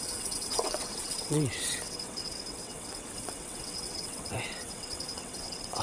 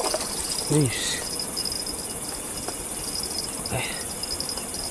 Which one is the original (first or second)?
second